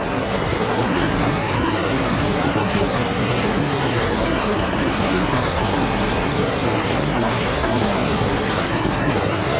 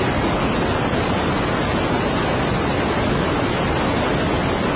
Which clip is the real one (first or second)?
second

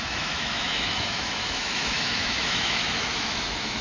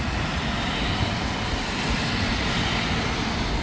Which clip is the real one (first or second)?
second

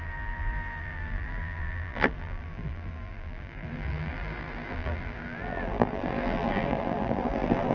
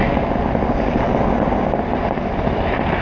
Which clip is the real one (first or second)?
second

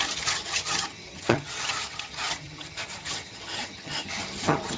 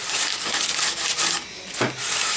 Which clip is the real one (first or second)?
second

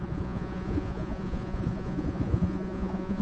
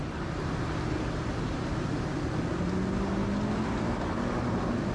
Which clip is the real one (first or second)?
second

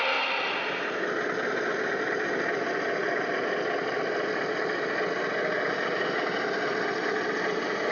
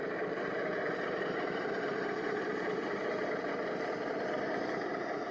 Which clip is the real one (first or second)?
first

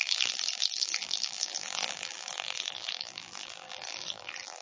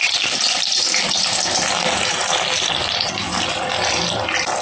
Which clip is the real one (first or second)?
second